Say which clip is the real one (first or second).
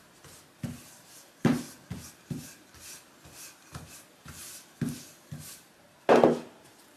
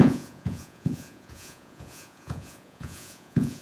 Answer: first